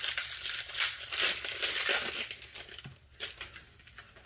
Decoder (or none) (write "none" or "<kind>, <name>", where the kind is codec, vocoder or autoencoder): none